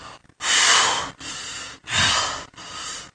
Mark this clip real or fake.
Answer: real